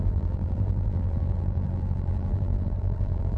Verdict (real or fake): fake